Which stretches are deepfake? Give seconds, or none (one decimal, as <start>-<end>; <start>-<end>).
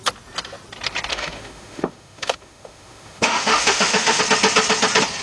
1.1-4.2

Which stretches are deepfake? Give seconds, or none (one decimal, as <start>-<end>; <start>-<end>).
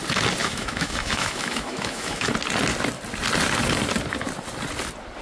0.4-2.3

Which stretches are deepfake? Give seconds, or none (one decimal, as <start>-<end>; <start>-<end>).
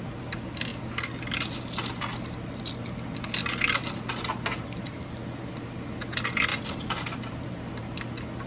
none